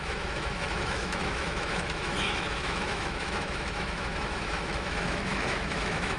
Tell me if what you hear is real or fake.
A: fake